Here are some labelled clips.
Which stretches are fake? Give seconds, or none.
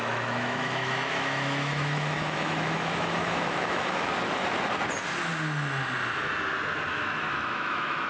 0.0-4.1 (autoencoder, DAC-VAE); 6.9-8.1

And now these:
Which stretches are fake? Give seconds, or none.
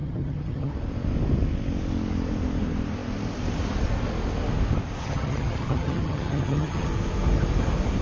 0.0-0.7 (vocoder, HiFi-GAN); 5.0-6.9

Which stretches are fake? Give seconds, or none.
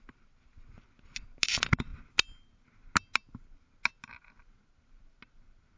none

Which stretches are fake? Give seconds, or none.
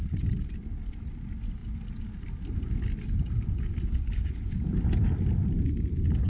none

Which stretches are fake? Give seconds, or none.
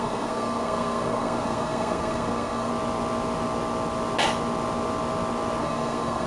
0.0-2.7 (codec, SNAC); 5.6-6.3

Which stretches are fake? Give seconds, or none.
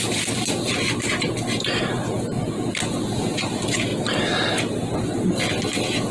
none